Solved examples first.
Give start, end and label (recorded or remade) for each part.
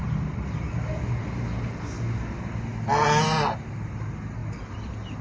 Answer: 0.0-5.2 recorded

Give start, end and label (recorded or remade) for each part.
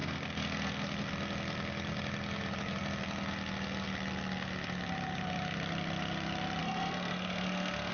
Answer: 0.0-1.1 remade; 1.1-6.6 recorded; 6.6-7.9 remade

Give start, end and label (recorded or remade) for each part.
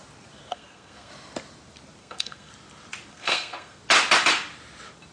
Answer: 0.0-0.5 recorded; 0.5-1.1 remade; 1.1-2.0 recorded; 2.0-2.5 remade; 2.5-3.1 recorded; 3.1-3.8 remade; 3.8-5.1 recorded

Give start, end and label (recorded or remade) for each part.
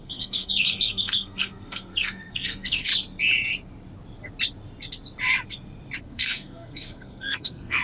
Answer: 0.0-2.9 remade; 2.9-6.0 recorded; 6.0-7.8 remade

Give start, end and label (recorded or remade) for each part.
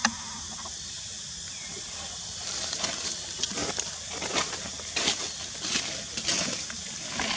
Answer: 0.0-7.4 recorded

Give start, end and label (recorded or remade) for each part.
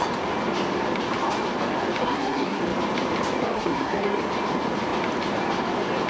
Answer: 0.0-2.0 recorded; 2.0-2.6 remade; 2.6-3.4 recorded; 3.4-4.2 remade; 4.2-6.1 recorded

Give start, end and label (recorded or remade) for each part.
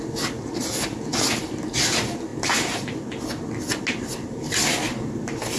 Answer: 0.0-5.6 recorded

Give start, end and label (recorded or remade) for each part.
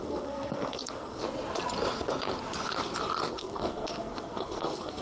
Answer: 0.0-1.2 remade; 1.2-3.3 recorded; 3.3-5.0 remade